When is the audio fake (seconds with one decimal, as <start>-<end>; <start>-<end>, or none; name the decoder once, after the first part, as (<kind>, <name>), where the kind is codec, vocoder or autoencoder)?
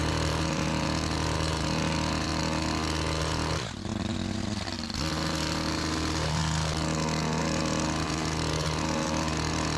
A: 0.0-2.3 (vocoder, BigVGAN v2); 3.2-3.9; 5.1-6.4; 7.4-9.8